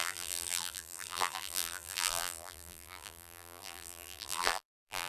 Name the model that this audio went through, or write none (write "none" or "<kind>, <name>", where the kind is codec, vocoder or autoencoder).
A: vocoder, BigVGAN v2